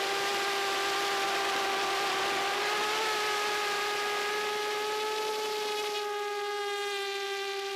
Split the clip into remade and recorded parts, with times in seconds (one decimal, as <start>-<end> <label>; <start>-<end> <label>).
0.0-7.8 recorded